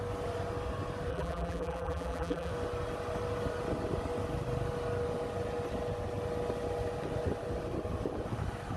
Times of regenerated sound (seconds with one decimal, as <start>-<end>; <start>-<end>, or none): 1.1-2.5